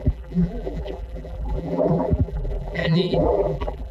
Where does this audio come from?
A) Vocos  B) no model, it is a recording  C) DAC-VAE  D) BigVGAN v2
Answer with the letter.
D